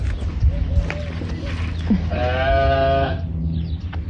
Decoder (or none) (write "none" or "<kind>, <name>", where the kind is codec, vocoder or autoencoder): none